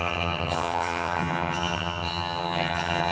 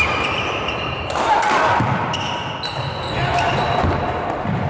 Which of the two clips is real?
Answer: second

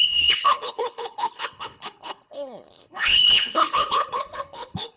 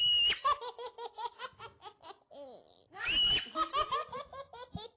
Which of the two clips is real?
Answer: second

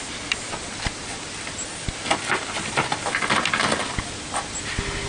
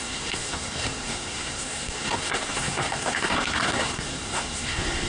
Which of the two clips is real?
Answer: first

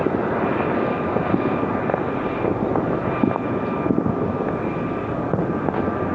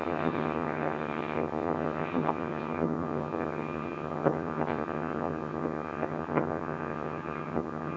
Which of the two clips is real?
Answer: first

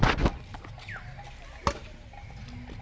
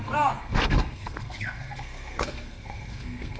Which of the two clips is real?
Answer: first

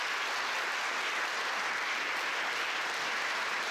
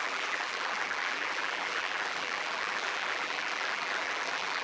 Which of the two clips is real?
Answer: first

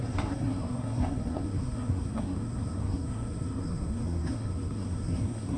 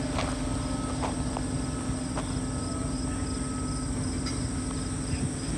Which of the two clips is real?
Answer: second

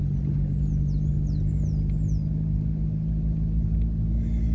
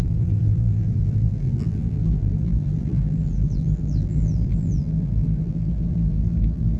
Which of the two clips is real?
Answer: first